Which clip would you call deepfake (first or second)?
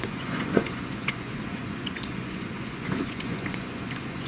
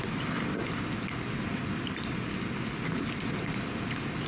first